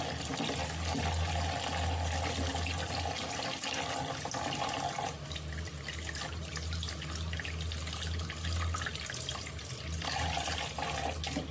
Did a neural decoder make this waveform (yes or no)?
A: no